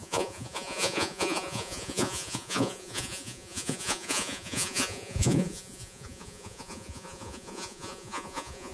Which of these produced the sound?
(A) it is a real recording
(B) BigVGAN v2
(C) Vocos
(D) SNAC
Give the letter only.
C